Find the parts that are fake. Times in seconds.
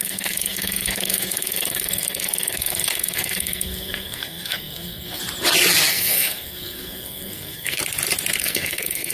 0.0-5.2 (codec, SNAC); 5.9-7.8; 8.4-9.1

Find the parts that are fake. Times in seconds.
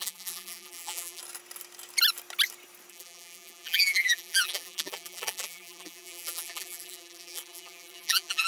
0.0-1.2 (vocoder, BigVGAN v2); 2.9-8.5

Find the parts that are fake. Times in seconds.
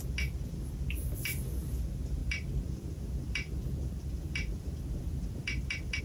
2.2-6.0 (vocoder, BigVGAN v2)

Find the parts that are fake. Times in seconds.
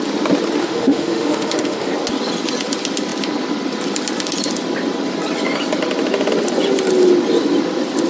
0.6-1.9 (autoencoder, DAC-VAE)